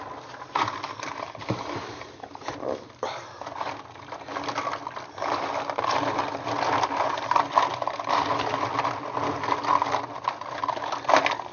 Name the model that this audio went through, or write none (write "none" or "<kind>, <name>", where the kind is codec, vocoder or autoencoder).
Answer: none